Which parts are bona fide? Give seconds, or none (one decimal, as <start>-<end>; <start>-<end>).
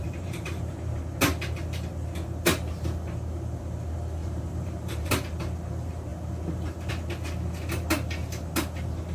1.0-4.2; 5.1-9.1